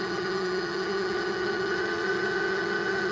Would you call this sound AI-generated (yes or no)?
yes